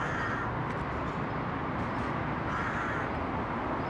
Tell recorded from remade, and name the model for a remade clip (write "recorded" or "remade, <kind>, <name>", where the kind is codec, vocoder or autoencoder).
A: recorded